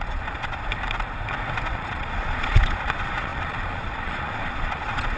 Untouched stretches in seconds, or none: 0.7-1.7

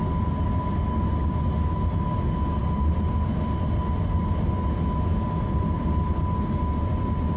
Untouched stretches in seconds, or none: 0.0-7.4

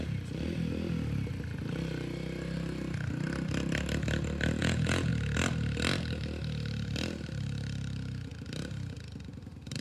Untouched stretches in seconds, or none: 0.0-4.6; 5.1-9.8

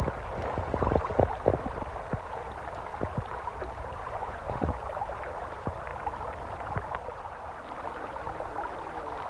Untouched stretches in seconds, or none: 0.0-4.0; 4.9-9.3

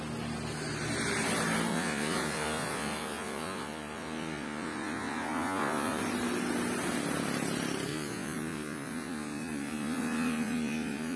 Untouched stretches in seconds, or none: 0.0-1.7; 6.0-7.9

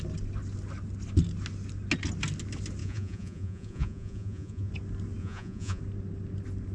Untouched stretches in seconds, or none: 0.0-2.8; 4.7-5.2; 5.8-6.7

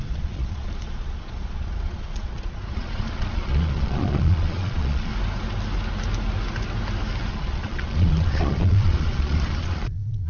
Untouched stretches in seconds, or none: 5.1-7.3

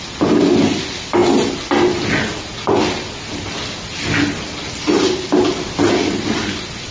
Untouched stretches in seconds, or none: 0.0-6.9